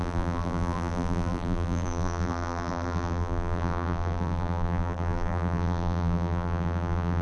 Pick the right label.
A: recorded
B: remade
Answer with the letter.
B